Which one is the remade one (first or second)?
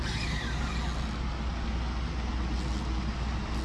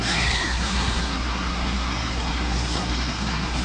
second